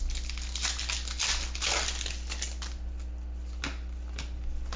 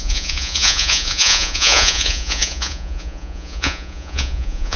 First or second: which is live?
first